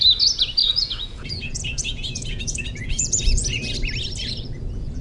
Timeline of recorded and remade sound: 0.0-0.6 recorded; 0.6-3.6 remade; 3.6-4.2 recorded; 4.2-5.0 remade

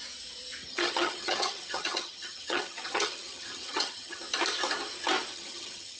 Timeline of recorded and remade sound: 0.0-0.6 recorded; 0.6-4.2 remade; 4.2-5.3 recorded; 5.3-6.0 remade

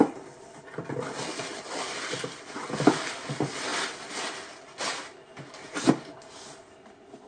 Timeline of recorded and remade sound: 0.0-7.3 recorded

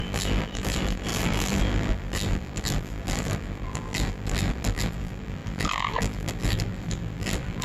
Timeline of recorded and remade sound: 0.0-7.6 remade